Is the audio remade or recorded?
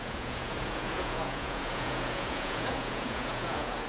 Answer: remade